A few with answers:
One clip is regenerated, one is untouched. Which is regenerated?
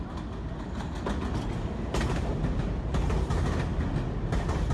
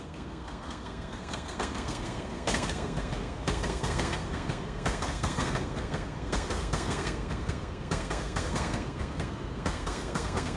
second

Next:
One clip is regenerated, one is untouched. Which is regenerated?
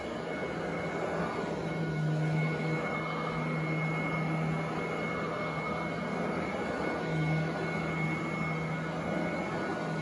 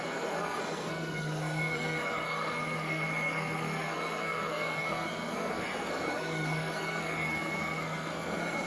second